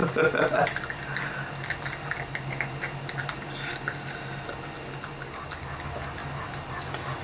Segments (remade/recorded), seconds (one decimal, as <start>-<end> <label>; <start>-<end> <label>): 0.0-7.2 recorded